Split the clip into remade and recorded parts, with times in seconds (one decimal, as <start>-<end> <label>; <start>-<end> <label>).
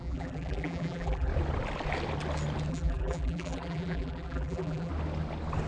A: 0.0-1.3 remade; 1.3-2.7 recorded; 2.7-4.9 remade; 4.9-5.7 recorded